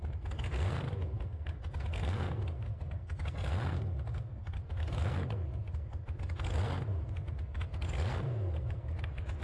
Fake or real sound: fake